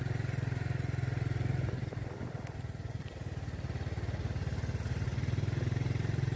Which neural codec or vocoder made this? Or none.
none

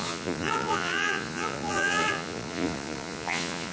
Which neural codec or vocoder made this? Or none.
vocoder, Vocos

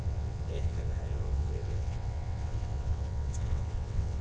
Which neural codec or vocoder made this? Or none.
vocoder, WaveNeXt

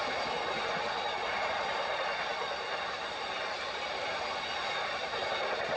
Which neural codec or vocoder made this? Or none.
none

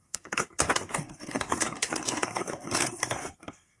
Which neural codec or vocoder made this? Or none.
codec, SNAC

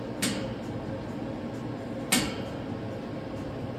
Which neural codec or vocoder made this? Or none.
none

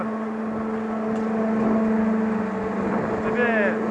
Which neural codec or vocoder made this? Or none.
none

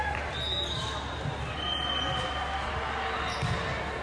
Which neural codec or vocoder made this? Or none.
none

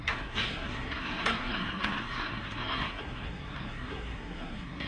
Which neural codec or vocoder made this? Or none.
codec, SNAC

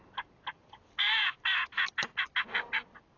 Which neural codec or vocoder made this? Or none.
none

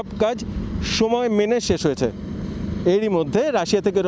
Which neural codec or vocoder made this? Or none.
none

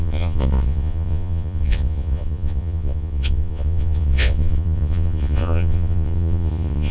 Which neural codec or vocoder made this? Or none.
vocoder, Vocos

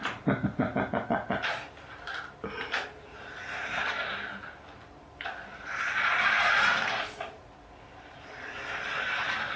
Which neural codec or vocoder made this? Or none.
vocoder, BigVGAN v2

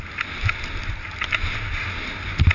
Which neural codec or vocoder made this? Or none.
none